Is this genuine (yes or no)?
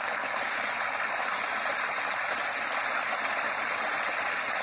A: yes